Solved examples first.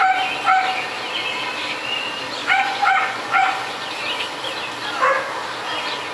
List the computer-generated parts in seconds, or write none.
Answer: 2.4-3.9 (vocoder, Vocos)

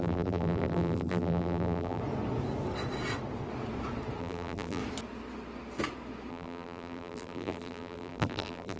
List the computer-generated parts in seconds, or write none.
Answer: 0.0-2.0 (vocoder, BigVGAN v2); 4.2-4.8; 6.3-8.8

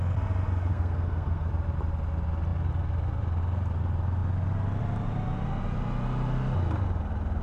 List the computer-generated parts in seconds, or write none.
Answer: 0.7-1.5 (codec, SNAC)